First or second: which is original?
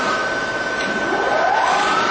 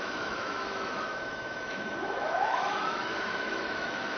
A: first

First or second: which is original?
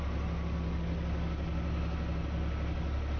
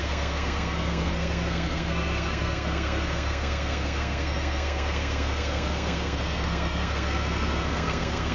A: first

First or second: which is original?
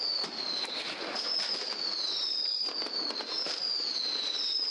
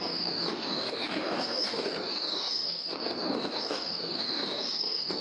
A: first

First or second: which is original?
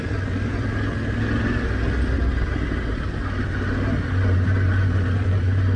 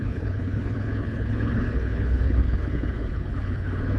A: first